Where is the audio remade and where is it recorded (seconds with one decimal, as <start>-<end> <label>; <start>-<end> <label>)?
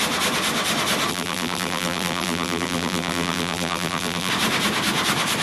0.0-1.1 recorded; 1.1-4.3 remade; 4.3-5.4 recorded